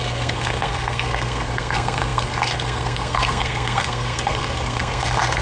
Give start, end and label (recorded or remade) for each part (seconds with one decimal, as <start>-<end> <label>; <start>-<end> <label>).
0.0-5.4 remade